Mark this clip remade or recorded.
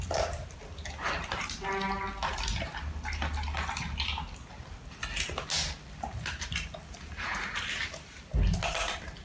recorded